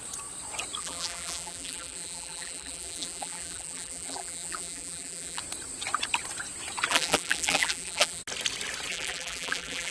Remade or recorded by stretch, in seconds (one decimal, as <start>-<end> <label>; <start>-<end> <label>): 0.0-0.8 recorded; 0.8-5.4 remade; 5.4-6.9 recorded; 6.9-8.2 remade; 8.2-8.9 recorded; 8.9-9.9 remade